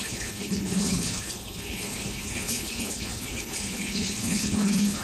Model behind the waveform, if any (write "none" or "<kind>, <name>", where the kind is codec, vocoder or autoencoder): codec, HILCodec